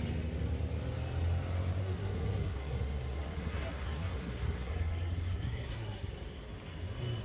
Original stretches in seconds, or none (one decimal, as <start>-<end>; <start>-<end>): 0.0-1.8; 6.1-7.2